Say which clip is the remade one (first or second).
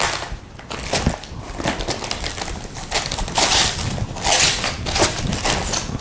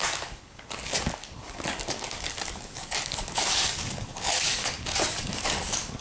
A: second